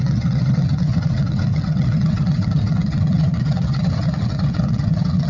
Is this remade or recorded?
remade